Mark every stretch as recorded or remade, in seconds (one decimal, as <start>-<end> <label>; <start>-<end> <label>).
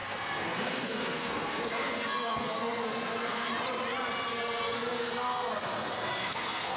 0.0-3.5 remade; 3.5-4.3 recorded; 4.3-6.8 remade